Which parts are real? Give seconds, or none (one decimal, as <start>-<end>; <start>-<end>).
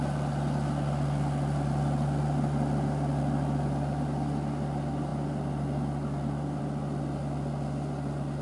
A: 0.0-8.4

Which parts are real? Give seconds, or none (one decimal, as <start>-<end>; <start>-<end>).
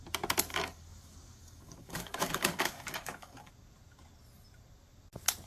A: 0.0-0.5; 3.5-5.5